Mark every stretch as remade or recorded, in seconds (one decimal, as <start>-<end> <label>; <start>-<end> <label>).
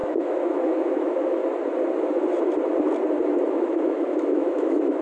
0.0-1.4 remade; 1.4-3.5 recorded; 3.5-5.0 remade